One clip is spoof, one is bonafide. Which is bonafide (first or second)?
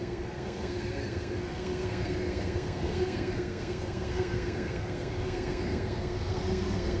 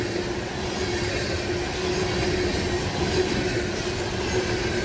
second